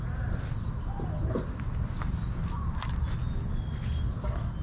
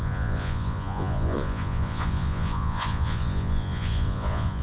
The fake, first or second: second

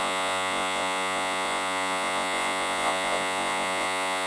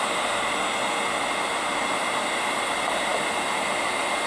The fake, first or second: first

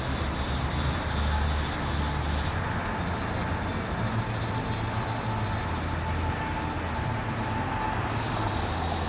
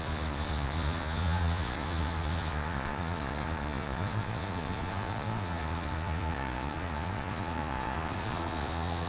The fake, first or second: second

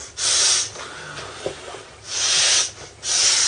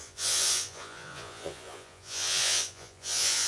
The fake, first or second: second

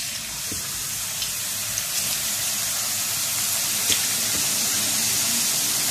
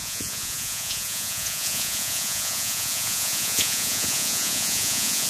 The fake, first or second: second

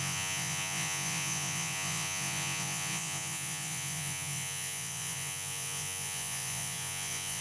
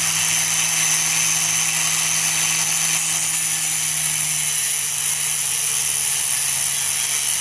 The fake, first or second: first